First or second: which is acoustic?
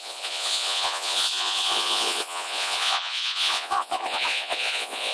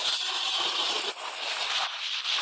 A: second